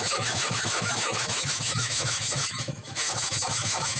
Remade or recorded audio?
remade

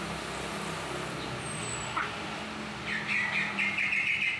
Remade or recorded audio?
recorded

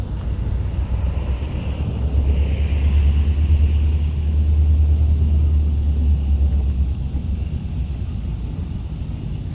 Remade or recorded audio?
recorded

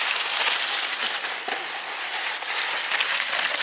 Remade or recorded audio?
recorded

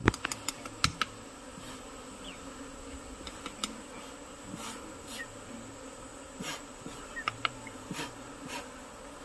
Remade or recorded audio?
recorded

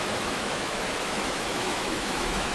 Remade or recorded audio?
remade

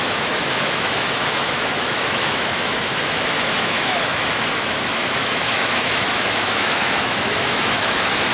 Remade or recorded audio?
remade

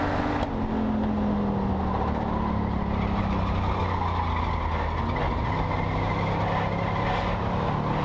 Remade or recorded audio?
recorded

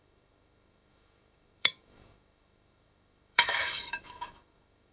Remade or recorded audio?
remade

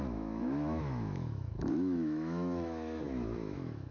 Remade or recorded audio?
remade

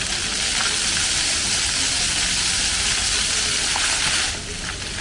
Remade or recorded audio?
recorded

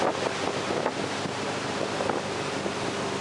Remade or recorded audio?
recorded